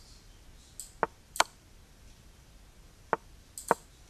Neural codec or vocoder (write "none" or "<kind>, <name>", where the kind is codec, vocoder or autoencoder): none